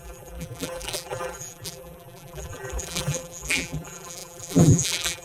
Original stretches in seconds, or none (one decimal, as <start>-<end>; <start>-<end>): none

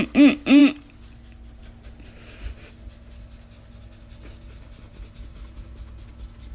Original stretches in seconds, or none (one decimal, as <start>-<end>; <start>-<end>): 0.0-6.5

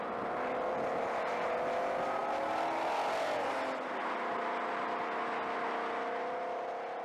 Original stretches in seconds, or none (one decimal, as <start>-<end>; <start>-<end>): 0.0-7.0

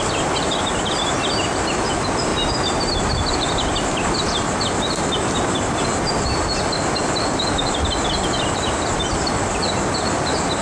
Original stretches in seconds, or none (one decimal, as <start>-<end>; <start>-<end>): 2.3-3.4

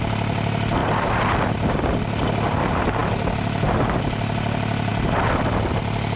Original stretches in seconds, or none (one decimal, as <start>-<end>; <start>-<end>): 0.0-6.2

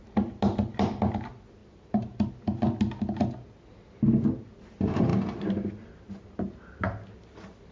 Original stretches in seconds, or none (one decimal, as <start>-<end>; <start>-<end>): 0.0-1.6; 2.3-7.7

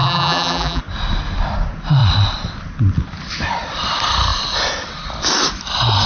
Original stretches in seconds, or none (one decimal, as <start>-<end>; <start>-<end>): 0.8-6.1

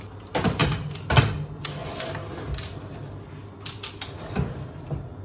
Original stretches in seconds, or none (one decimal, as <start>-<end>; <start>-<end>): 0.0-5.2